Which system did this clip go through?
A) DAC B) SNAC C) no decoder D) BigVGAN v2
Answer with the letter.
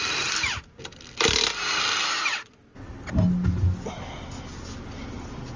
C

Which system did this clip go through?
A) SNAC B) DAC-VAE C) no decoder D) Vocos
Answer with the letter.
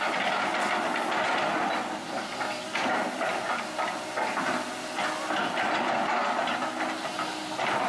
C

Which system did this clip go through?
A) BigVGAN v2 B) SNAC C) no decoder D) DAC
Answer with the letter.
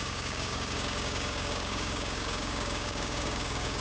D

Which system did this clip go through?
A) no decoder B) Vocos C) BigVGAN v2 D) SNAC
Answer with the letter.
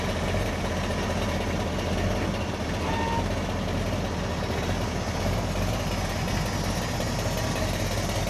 A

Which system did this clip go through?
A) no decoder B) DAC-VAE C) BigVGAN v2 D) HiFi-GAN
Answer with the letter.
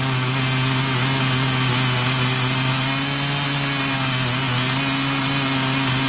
A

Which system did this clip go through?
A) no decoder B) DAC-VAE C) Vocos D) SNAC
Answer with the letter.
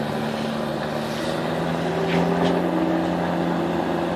A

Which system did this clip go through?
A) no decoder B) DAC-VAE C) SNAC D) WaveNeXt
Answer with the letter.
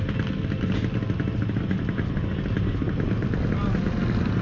A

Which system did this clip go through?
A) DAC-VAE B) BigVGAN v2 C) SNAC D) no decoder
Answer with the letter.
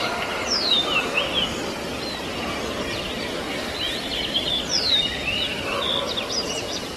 B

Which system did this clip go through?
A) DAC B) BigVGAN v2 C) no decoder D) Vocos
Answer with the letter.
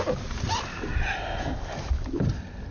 C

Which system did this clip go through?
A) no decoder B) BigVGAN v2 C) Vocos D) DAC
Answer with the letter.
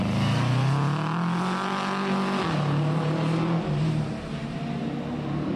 A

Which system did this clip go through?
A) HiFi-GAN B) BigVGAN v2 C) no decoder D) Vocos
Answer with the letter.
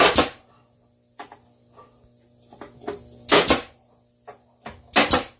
C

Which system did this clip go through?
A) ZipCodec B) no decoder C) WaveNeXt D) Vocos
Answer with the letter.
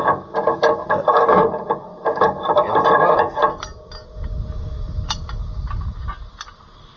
B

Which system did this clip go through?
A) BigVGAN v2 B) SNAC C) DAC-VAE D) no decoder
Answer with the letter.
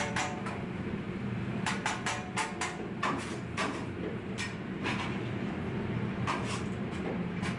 A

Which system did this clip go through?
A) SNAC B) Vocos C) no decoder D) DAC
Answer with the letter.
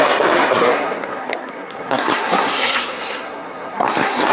A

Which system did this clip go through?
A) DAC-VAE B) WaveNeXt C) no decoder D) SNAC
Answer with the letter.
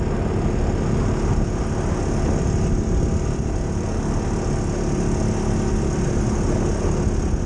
C